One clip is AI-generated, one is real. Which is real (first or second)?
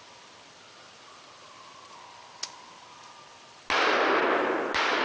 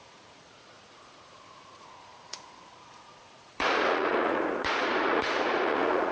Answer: first